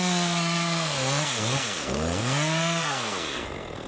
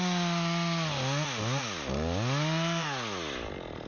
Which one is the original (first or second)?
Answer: second